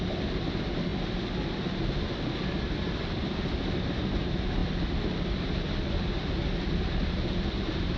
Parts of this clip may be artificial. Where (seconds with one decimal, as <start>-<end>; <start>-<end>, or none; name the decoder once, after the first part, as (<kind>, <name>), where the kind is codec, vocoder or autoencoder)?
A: none

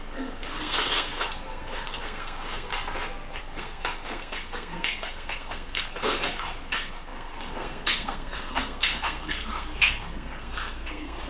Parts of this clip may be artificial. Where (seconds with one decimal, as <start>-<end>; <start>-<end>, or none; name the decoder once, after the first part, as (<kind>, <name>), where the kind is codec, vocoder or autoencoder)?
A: 0.0-2.7 (codec, SNAC); 3.4-11.3

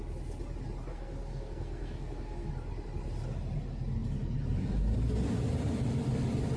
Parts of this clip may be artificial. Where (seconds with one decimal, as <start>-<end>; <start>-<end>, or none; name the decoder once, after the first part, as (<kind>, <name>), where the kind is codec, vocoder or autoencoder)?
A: 0.9-2.5 (codec, SNAC)